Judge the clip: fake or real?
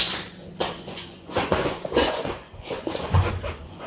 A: fake